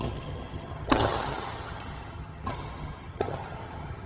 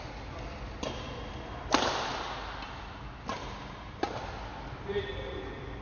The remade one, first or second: first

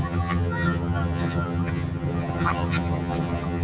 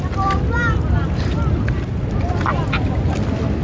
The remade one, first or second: first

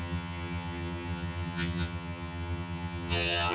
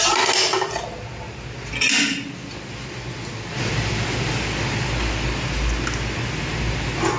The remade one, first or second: first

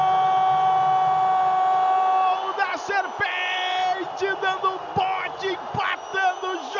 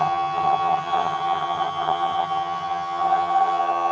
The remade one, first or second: second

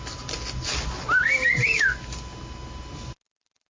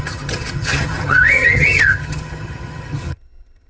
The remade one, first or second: second